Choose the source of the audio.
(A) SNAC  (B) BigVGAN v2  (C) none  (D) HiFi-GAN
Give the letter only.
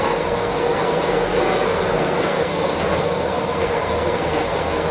A